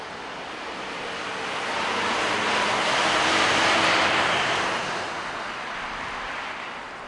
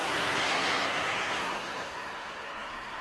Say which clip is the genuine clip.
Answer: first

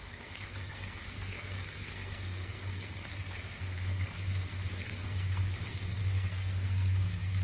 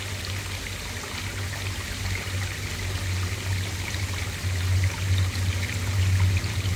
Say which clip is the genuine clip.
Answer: second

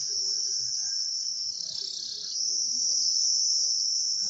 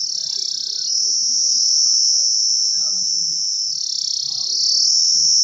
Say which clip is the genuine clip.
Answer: second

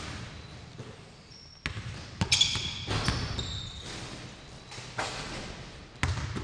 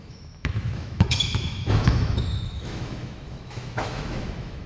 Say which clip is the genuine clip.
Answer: first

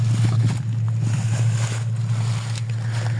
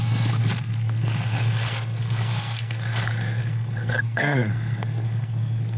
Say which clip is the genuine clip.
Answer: first